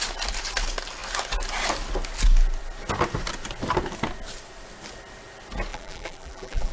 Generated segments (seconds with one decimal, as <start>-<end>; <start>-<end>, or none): 5.7-6.7